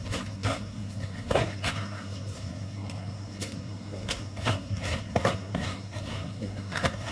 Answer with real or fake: fake